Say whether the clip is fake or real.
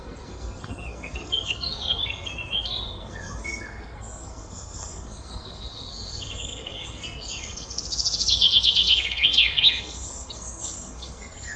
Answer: fake